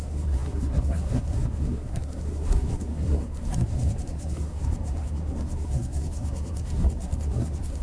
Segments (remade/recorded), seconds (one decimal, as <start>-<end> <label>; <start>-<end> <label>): 0.0-7.8 remade